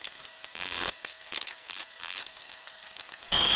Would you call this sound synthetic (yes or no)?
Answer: yes